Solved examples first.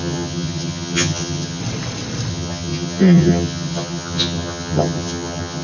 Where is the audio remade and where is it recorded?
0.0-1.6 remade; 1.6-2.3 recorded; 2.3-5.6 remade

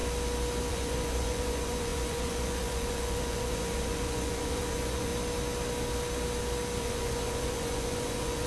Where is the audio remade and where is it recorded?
0.0-0.7 recorded; 0.7-5.1 remade; 5.1-6.8 recorded; 6.8-8.5 remade

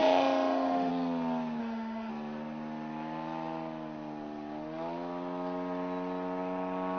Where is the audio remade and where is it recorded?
0.0-0.9 remade; 0.9-1.6 recorded; 1.6-2.1 remade; 2.1-7.0 recorded

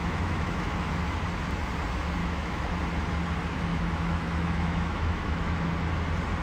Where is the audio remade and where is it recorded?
0.0-0.9 remade; 0.9-2.2 recorded; 2.2-2.7 remade; 2.7-3.7 recorded; 3.7-5.7 remade; 5.7-6.4 recorded

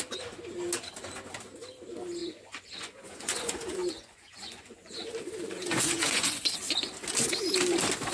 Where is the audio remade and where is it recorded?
0.0-2.2 recorded; 2.2-6.9 remade; 6.9-8.1 recorded

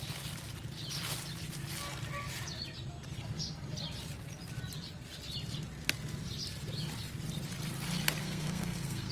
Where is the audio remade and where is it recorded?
0.0-8.2 recorded; 8.2-9.1 remade